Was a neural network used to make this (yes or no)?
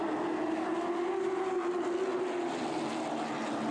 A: no